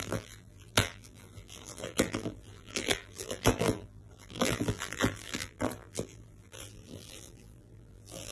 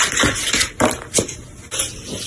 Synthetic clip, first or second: first